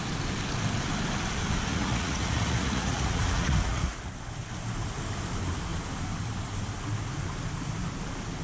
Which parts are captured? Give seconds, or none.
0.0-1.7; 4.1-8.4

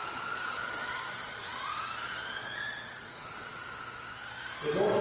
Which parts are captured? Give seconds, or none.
1.5-2.4; 3.6-5.0

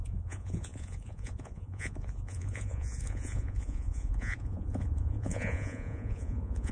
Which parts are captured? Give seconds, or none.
none

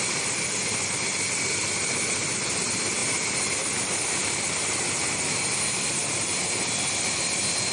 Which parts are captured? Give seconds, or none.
0.0-7.7

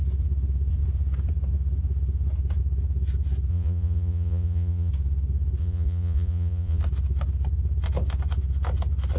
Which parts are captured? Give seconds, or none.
0.0-3.5; 4.9-5.6; 6.8-9.2

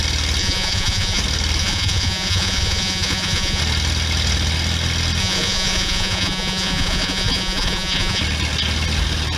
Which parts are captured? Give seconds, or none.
0.0-0.4; 1.2-1.6; 3.6-5.2; 8.2-9.4

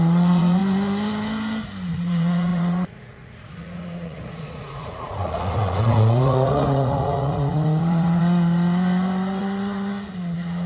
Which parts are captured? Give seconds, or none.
0.6-1.9; 8.2-9.4